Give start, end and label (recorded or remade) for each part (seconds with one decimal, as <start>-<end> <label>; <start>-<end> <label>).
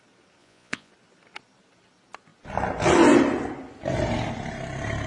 0.0-0.4 recorded; 0.4-0.9 remade; 0.9-5.1 recorded